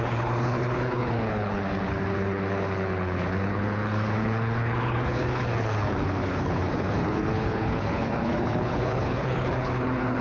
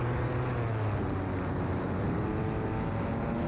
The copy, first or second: first